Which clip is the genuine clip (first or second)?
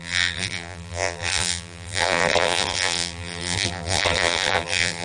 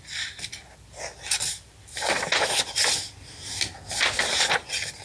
second